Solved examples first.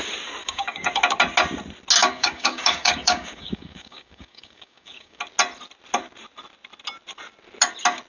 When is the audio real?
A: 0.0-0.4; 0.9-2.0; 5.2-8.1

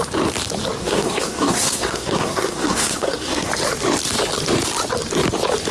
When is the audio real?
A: 0.0-0.8; 3.5-5.7